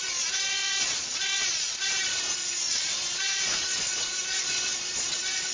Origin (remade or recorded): remade